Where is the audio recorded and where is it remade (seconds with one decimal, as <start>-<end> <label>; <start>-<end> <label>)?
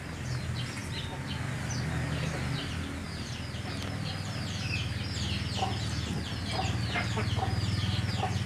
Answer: 0.0-8.5 recorded